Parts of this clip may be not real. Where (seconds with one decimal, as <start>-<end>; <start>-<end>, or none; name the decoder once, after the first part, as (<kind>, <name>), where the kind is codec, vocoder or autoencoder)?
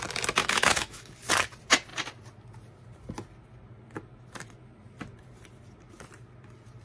0.4-1.1 (autoencoder, DAC-VAE)